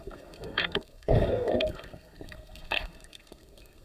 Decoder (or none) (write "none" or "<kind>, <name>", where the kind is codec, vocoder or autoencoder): codec, SNAC